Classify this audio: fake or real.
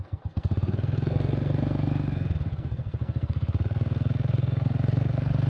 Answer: fake